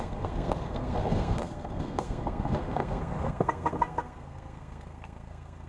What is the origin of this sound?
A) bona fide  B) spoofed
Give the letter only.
B